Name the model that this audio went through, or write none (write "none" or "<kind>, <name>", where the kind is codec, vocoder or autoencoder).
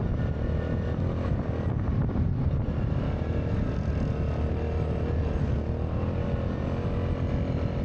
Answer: none